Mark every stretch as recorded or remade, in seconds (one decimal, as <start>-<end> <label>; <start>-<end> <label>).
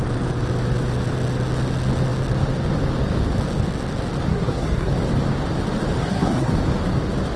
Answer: 0.0-4.3 recorded; 4.3-4.9 remade; 4.9-6.0 recorded; 6.0-6.5 remade; 6.5-7.4 recorded